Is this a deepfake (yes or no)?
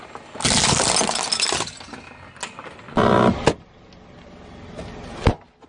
no